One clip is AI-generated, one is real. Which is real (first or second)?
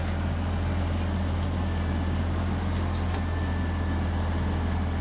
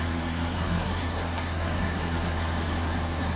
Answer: first